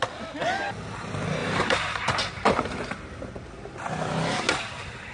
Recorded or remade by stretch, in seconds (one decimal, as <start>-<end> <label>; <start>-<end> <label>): 0.0-1.4 recorded; 1.4-2.9 remade; 2.9-5.1 recorded